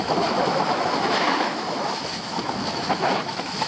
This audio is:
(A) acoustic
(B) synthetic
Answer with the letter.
B